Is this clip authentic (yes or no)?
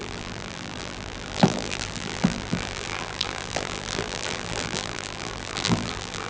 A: no